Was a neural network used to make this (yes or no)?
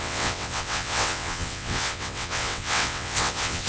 yes